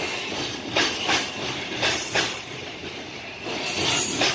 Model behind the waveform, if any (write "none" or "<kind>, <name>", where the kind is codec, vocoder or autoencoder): none